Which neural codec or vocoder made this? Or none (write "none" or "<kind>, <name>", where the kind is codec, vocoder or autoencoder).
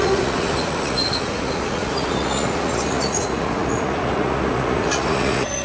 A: vocoder, Vocos